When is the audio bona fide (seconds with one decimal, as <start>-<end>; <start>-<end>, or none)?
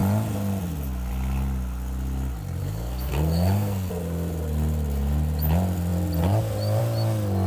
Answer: 0.0-2.6; 3.9-7.5